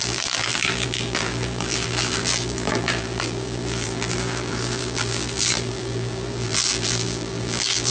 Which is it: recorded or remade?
remade